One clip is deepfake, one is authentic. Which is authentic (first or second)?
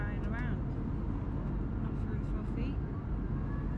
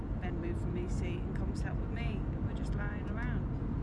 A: first